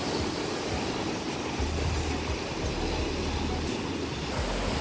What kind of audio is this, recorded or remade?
recorded